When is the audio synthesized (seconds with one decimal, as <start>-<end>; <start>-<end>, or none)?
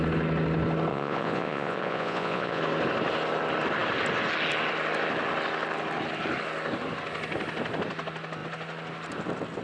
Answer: 0.9-2.6